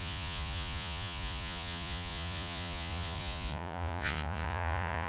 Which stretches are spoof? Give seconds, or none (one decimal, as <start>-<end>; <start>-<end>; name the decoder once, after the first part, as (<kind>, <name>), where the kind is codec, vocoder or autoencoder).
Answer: 0.0-5.1 (vocoder, Vocos)